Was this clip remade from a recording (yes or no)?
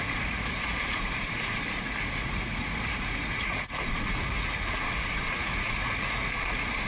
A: yes